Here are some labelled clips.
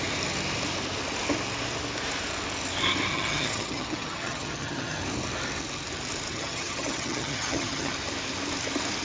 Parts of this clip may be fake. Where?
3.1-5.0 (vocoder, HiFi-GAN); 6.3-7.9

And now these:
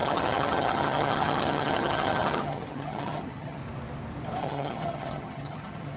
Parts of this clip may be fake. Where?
0.0-3.6 (vocoder, HiFi-GAN); 4.4-6.0

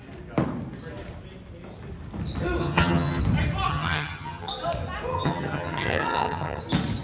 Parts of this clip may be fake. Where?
2.6-3.2 (vocoder, HiFi-GAN); 3.7-4.5; 5.1-6.6

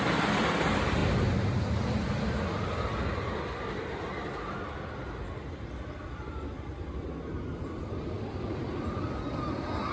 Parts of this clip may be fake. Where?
none

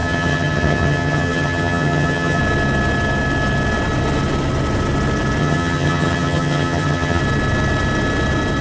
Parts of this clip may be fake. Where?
0.0-2.4 (vocoder, HiFi-GAN); 5.4-7.2

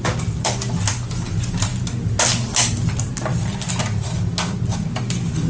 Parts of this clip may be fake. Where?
none

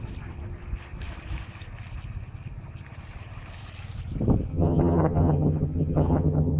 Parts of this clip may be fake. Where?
4.5-6.6 (vocoder, HiFi-GAN)